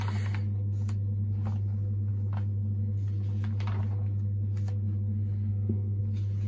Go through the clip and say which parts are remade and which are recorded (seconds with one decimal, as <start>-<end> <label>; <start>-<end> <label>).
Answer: 0.0-5.5 recorded; 5.5-6.0 remade; 6.0-6.5 recorded

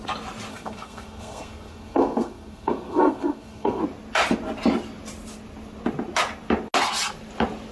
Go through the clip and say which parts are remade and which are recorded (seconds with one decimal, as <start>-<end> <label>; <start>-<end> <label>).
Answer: 0.0-0.5 recorded; 0.5-3.8 remade; 3.8-7.7 recorded

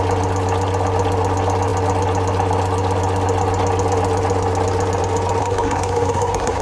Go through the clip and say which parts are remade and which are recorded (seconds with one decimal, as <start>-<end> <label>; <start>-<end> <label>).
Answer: 0.0-5.4 recorded; 5.4-6.6 remade

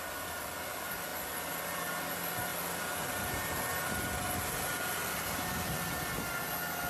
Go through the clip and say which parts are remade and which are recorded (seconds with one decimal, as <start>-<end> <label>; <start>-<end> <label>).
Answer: 0.0-6.9 recorded

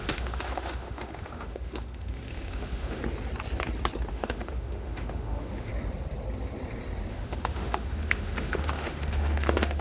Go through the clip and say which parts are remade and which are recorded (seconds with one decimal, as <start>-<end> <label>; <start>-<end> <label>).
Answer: 0.0-3.0 remade; 3.0-4.1 recorded; 4.1-5.7 remade; 5.7-7.1 recorded; 7.1-9.8 remade

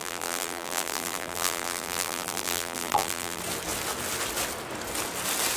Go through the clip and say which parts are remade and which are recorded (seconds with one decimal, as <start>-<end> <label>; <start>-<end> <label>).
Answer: 0.0-3.4 remade; 3.4-5.6 recorded

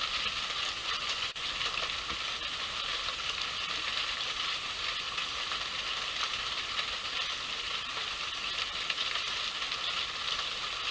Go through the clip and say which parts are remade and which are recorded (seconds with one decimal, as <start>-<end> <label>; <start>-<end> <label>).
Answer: 0.0-0.8 recorded; 0.8-1.5 remade; 1.5-10.9 recorded

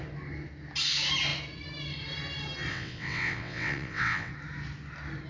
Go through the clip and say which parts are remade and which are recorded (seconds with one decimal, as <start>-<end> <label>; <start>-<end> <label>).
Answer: 0.0-2.7 recorded; 2.7-4.3 remade; 4.3-5.3 recorded